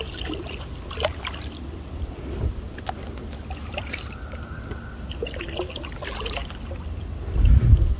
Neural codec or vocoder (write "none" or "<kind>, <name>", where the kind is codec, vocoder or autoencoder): none